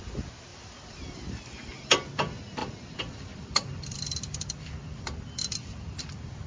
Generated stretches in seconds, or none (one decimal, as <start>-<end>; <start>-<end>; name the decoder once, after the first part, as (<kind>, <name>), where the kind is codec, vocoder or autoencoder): 0.5-2.1 (vocoder, BigVGAN v2); 2.6-6.5